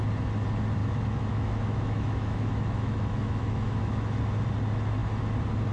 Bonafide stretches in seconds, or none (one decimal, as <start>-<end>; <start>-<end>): 0.0-0.8; 4.2-5.7